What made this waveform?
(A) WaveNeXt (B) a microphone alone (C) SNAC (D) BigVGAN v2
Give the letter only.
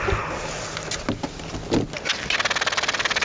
B